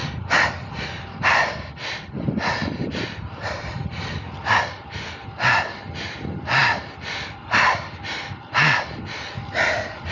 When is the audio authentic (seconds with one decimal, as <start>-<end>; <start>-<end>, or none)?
0.0-10.1